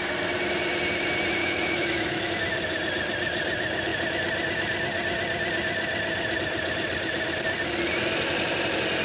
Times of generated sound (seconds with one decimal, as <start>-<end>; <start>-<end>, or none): 1.4-2.3